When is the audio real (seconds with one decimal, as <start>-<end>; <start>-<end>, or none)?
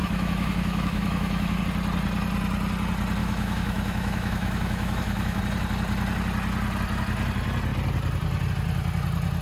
1.6-3.2; 5.4-9.4